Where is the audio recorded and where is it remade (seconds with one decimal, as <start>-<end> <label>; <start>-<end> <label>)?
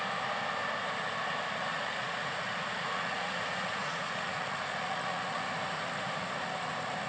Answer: 0.0-1.7 recorded; 1.7-5.4 remade; 5.4-7.1 recorded